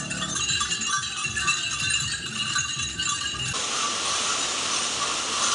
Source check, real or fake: real